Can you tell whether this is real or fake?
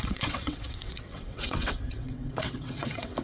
fake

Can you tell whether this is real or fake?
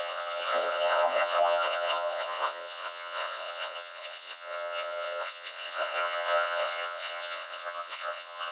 fake